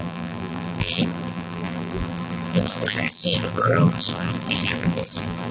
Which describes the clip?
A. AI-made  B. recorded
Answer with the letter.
A